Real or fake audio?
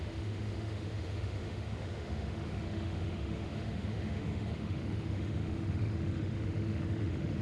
fake